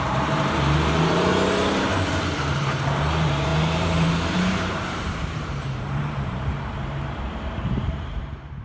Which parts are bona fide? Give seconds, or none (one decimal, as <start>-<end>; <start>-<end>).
1.3-1.9